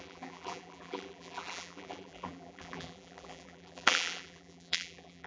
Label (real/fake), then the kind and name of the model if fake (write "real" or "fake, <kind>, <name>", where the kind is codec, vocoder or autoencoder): fake, vocoder, BigVGAN v2